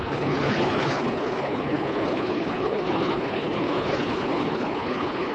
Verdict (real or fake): fake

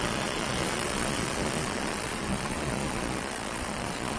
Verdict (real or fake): fake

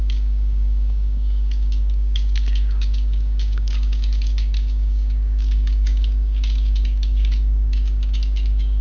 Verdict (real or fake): fake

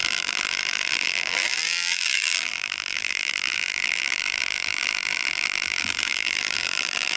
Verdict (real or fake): fake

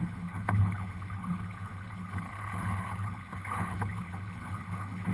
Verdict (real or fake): fake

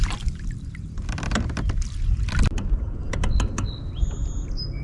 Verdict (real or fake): fake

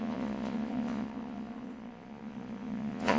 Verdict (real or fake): fake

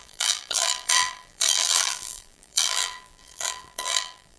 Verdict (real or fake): fake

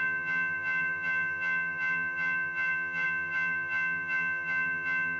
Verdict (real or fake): fake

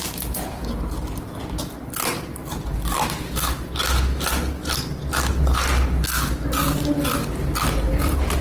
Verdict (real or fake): real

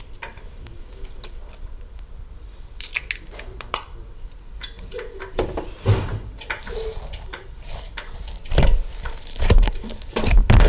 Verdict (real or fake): fake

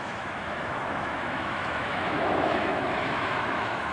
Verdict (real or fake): fake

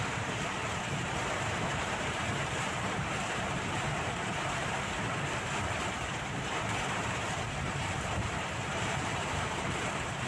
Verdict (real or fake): fake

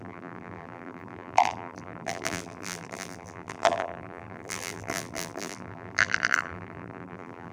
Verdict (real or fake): fake